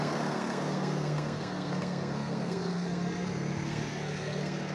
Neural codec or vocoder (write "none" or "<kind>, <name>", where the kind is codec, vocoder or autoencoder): codec, SNAC